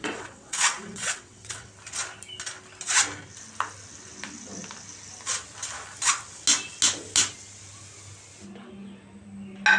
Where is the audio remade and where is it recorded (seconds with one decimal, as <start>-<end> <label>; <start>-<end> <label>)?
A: 0.0-1.7 remade; 1.7-9.8 recorded